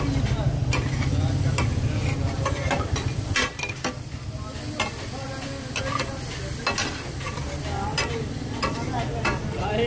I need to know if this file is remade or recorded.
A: recorded